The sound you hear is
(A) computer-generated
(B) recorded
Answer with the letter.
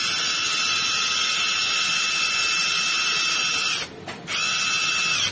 B